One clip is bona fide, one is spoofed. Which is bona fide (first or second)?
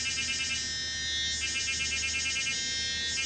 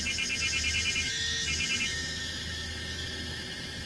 first